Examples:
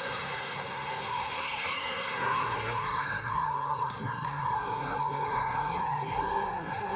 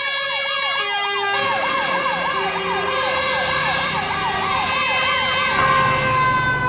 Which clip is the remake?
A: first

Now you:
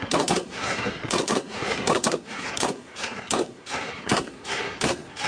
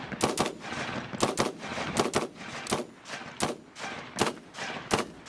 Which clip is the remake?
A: first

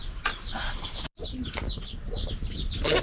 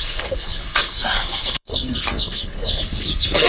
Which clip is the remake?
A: second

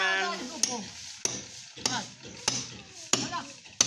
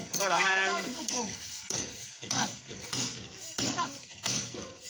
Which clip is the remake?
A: second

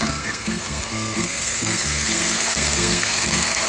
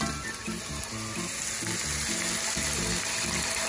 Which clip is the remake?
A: first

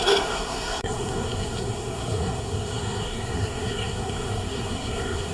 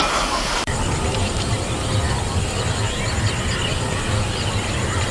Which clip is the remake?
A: first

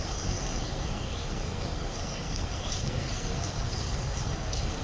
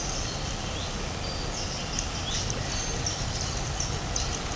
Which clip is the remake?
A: first